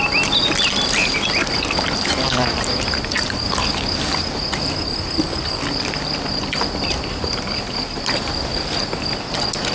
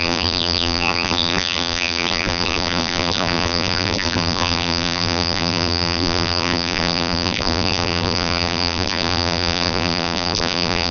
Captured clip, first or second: first